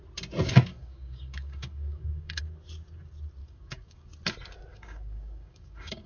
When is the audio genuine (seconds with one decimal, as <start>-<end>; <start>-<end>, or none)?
0.0-0.7; 2.4-3.4; 4.1-4.7